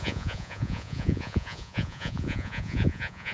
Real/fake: fake